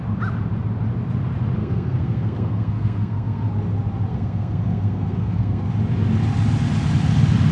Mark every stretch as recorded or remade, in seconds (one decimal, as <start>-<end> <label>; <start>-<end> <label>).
0.0-1.6 recorded; 1.6-3.5 remade; 3.5-4.1 recorded; 4.1-5.7 remade; 5.7-7.5 recorded

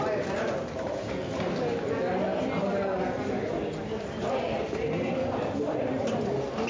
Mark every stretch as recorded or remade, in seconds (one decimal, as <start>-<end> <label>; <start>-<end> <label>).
0.0-4.8 recorded; 4.8-6.1 remade; 6.1-6.7 recorded